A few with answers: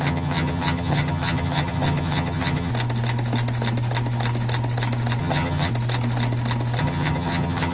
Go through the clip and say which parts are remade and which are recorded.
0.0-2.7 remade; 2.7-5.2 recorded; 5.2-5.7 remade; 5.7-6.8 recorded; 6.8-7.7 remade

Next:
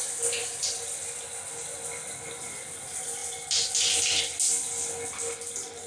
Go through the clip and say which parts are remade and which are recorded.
0.0-0.4 recorded; 0.4-1.2 remade; 1.2-5.9 recorded